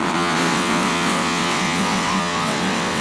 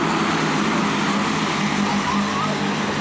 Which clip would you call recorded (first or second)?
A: second